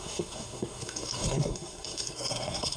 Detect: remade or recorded remade